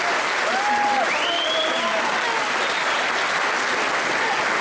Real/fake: real